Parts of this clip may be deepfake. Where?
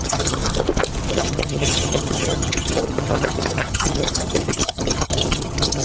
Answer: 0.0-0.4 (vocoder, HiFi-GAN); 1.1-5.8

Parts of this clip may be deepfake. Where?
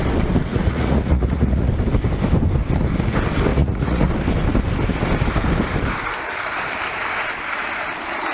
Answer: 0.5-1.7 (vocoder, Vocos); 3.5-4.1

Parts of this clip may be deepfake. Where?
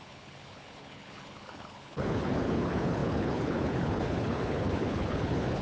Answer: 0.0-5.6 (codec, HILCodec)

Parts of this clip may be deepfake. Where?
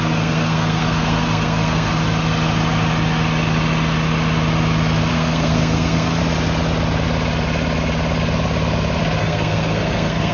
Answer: 0.0-1.9 (codec, SNAC); 5.1-6.2; 9.2-10.3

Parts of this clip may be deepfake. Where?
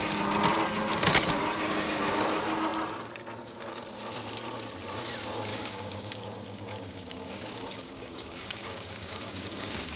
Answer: 5.5-10.0 (codec, DAC)